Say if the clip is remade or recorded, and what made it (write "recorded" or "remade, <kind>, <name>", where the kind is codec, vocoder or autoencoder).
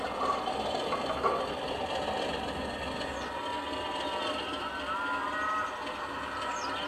recorded